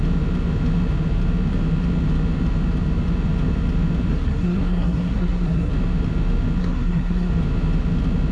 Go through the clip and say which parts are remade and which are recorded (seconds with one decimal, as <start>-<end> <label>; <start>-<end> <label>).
0.0-4.1 recorded; 4.1-5.7 remade; 5.7-6.6 recorded; 6.6-7.3 remade; 7.3-8.3 recorded